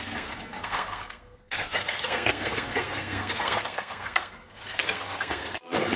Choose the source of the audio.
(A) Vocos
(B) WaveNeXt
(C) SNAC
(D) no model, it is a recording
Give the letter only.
C